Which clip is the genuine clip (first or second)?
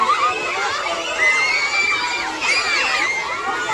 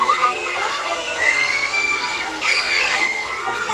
first